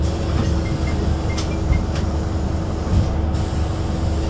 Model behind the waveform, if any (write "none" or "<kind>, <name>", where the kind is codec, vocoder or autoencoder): none